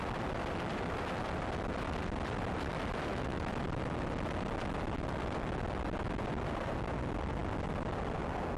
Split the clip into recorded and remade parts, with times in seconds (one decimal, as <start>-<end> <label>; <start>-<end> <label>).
0.0-3.1 recorded; 3.1-3.6 remade; 3.6-8.6 recorded